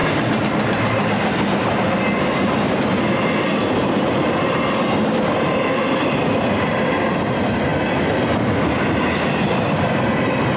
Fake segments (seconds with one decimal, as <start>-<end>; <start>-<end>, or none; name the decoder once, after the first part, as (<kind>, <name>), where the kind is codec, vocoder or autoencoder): none